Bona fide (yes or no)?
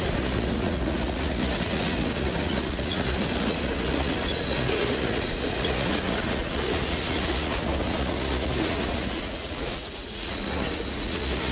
no